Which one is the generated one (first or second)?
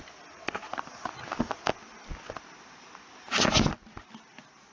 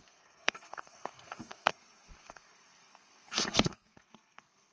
second